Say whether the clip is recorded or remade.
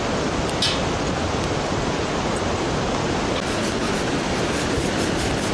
recorded